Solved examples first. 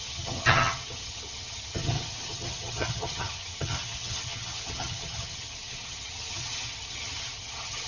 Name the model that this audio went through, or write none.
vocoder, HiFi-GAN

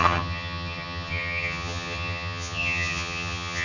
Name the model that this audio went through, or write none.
vocoder, HiFi-GAN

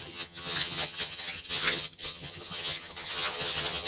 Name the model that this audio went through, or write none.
vocoder, HiFi-GAN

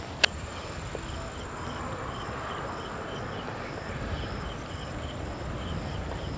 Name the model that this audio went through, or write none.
none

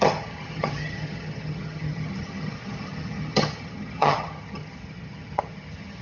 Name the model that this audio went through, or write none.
vocoder, HiFi-GAN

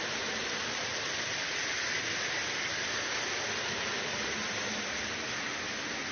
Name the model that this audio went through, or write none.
none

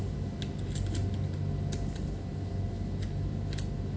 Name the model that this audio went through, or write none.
none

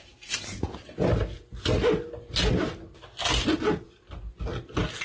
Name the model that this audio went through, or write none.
none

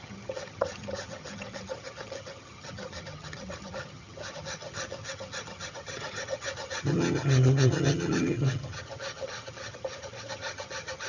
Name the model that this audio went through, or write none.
vocoder, HiFi-GAN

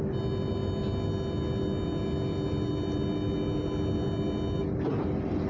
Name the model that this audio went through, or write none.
none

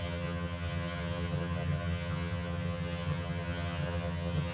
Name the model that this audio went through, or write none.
vocoder, HiFi-GAN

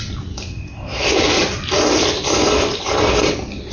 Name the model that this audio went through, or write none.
none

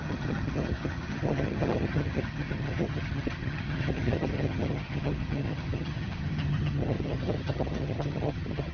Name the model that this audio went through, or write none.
vocoder, HiFi-GAN